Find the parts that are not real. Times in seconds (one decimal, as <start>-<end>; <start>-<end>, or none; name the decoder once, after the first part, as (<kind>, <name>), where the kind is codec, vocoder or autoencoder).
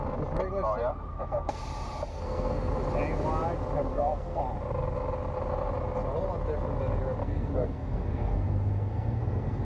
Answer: 1.1-1.6 (codec, SNAC); 2.1-2.7; 3.9-4.4; 7.2-9.6